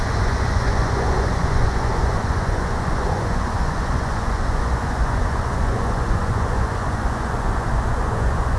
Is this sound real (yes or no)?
no